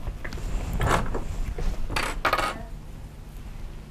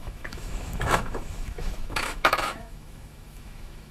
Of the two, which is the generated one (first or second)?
second